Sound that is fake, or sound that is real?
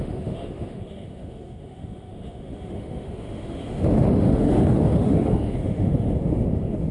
fake